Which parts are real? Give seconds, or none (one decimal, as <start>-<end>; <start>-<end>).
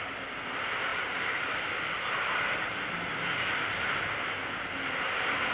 0.0-0.9; 4.2-5.5